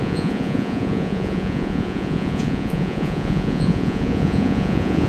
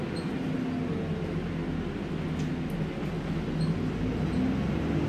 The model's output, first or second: first